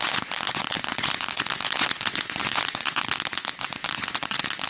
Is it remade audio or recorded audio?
remade